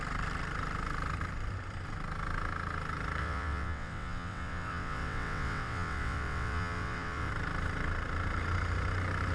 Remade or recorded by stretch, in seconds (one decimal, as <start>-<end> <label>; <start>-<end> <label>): 0.0-3.2 recorded; 3.2-7.3 remade; 7.3-9.3 recorded